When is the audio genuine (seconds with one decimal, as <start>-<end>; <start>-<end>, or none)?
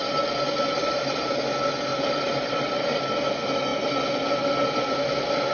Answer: 0.0-0.8; 1.4-1.9; 3.1-5.5